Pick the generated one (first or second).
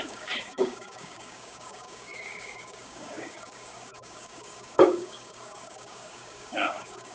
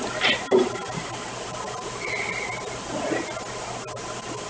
first